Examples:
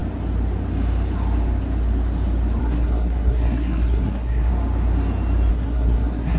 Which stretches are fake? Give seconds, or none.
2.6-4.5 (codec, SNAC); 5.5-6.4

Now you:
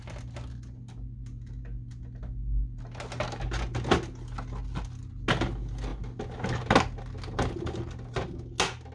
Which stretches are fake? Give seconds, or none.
none

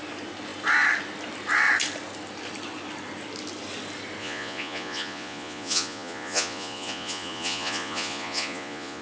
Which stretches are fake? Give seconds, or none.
4.2-9.0 (vocoder, Vocos)

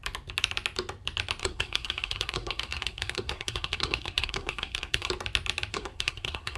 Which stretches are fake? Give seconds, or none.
1.4-5.1 (codec, SNAC); 5.7-6.6

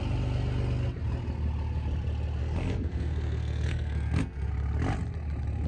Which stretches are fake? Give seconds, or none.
2.4-4.5 (codec, SNAC)

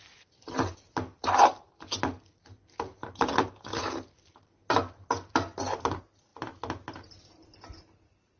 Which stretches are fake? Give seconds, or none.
none